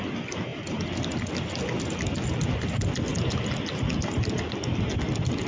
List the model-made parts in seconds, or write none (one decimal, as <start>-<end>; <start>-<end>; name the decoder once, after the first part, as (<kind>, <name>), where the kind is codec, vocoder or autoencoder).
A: none